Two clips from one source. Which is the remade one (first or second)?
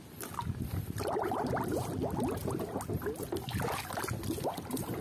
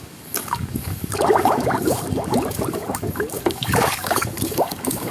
second